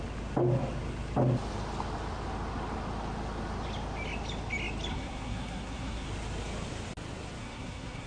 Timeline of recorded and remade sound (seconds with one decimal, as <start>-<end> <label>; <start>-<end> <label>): 0.0-4.9 recorded; 4.9-6.1 remade; 6.1-7.4 recorded; 7.4-8.1 remade